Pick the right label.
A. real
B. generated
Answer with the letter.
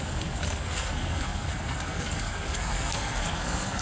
B